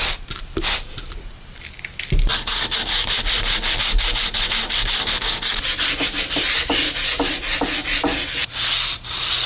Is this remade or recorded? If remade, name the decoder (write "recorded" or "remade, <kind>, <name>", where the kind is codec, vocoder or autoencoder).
recorded